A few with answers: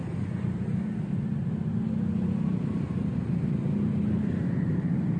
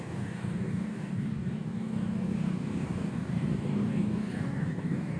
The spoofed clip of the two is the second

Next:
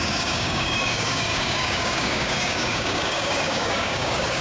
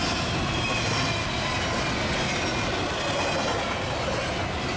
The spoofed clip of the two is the first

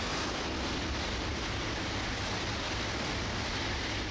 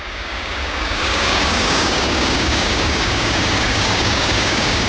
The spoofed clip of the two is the second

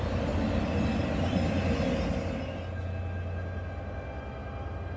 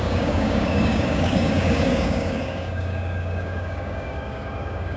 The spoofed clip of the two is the second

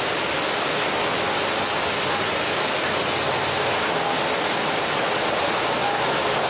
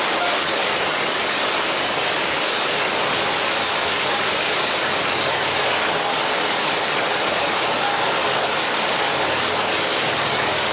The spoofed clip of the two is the second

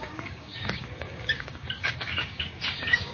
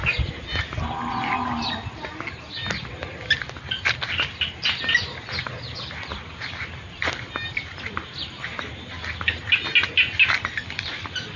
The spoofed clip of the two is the first